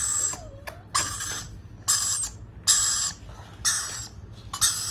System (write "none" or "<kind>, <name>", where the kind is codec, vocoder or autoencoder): none